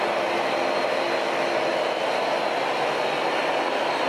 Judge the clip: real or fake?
real